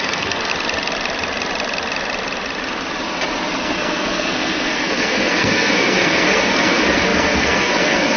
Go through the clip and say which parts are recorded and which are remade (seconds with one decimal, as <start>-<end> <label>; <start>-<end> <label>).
0.0-0.5 remade; 0.5-3.6 recorded; 3.6-8.2 remade